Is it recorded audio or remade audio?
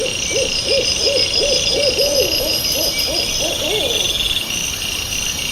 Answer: recorded